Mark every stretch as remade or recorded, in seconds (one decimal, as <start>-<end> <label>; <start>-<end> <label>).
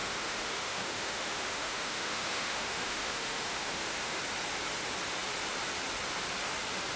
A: 0.0-4.2 remade; 4.2-7.0 recorded